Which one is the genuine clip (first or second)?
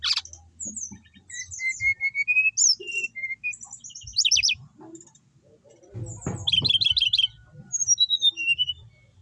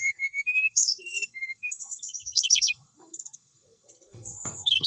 first